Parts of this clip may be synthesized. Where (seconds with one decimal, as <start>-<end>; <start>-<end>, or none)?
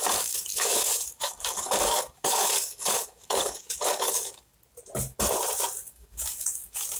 0.0-4.5; 5.9-7.0